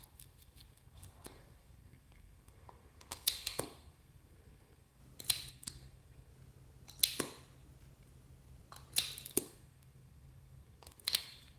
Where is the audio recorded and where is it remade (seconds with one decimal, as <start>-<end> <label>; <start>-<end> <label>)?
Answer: 0.0-5.0 remade; 5.0-5.5 recorded; 5.5-6.3 remade; 6.3-9.3 recorded; 9.3-11.6 remade